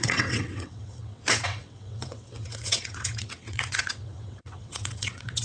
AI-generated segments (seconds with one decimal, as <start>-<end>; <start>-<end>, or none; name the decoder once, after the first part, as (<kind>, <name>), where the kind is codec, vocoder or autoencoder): 0.0-5.4 (vocoder, WaveNeXt)